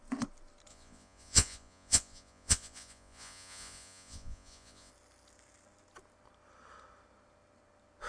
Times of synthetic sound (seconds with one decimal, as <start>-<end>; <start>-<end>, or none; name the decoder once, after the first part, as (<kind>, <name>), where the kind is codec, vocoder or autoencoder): 0.7-4.9 (vocoder, Vocos)